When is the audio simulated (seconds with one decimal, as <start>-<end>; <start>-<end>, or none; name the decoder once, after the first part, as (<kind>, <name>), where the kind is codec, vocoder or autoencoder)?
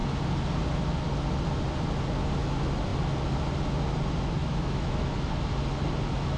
4.4-5.3 (autoencoder, DAC-VAE)